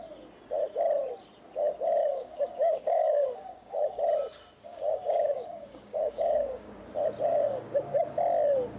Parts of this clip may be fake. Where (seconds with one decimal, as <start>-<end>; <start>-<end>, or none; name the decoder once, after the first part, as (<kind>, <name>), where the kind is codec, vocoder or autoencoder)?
2.0-4.0 (codec, DAC); 4.7-6.8; 7.3-8.0